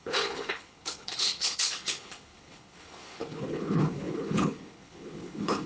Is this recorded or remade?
remade